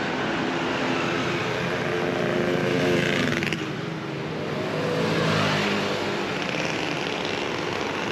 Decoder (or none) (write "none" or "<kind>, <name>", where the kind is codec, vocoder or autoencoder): none